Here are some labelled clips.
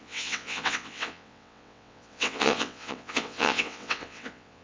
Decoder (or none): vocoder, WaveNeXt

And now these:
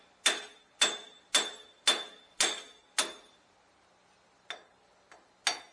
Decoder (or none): none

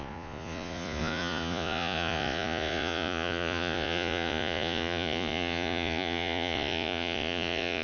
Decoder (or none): vocoder, Vocos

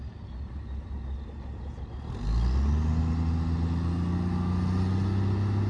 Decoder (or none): none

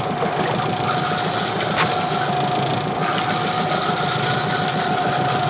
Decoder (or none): none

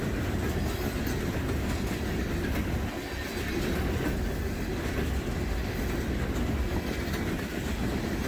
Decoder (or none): none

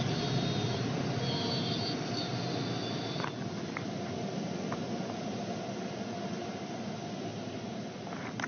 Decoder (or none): none